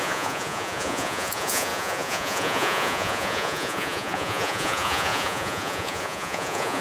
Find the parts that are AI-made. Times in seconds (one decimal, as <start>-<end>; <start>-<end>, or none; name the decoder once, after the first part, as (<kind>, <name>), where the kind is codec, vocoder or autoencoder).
0.0-6.8 (vocoder, Vocos)

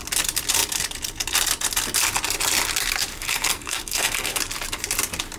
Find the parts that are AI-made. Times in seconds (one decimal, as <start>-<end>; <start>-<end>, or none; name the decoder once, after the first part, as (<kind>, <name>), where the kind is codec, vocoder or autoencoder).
3.1-4.4 (codec, SNAC)

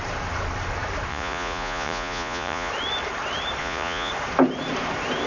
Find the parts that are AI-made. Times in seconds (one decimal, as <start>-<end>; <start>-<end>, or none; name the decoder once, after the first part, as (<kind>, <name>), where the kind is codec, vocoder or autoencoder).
1.1-2.7 (vocoder, Vocos); 3.6-4.1

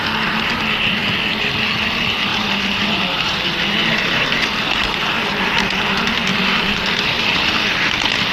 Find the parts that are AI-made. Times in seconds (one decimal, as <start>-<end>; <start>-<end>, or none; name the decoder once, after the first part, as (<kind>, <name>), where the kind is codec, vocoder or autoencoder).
2.3-5.3 (vocoder, BigVGAN v2); 6.3-7.9

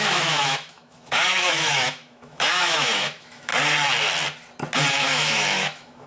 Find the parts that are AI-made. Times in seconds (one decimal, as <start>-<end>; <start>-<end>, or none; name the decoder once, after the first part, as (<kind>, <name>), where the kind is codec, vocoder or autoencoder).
0.0-3.5 (autoencoder, DAC-VAE); 4.9-6.1

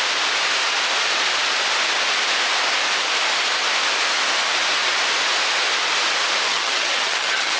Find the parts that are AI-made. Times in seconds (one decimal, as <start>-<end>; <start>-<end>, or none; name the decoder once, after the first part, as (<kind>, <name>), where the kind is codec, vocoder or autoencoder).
6.5-7.6 (vocoder, HiFi-GAN)

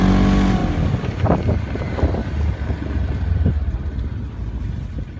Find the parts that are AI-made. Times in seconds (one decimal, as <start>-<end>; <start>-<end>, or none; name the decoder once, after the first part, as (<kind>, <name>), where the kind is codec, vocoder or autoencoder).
none

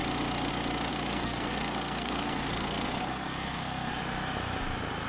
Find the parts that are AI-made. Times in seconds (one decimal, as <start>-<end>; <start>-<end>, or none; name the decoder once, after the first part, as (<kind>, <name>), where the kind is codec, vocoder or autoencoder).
0.9-4.0 (codec, SNAC)